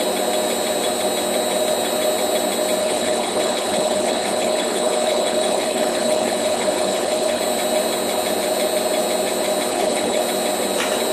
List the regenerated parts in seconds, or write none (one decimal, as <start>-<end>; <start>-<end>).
2.8-7.4; 9.7-10.2